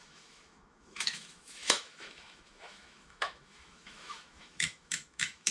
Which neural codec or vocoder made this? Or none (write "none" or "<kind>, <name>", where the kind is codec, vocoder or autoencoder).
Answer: autoencoder, DAC-VAE